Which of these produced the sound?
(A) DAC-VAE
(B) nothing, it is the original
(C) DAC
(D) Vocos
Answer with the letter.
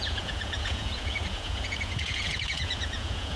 D